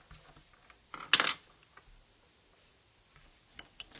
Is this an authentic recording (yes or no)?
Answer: yes